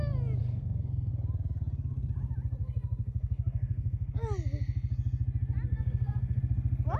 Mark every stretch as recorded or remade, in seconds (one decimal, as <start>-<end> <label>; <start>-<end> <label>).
0.0-0.4 recorded; 0.4-1.1 remade; 1.1-2.6 recorded; 2.6-4.1 remade; 4.1-5.7 recorded; 5.7-6.4 remade; 6.4-7.0 recorded